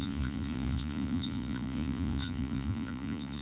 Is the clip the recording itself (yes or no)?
no